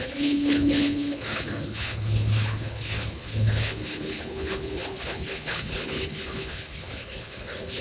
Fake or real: fake